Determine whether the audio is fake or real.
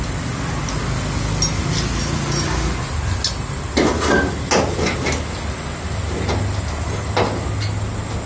real